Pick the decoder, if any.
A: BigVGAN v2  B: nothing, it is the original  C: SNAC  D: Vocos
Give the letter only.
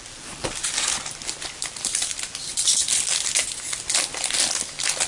B